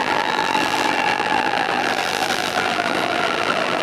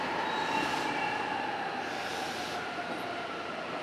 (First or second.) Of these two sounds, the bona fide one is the second